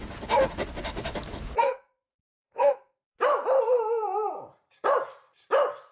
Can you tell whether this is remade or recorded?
remade